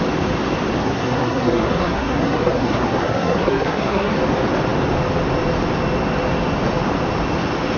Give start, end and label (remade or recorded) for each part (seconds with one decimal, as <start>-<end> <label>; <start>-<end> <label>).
0.0-0.8 recorded; 0.8-4.1 remade; 4.1-7.8 recorded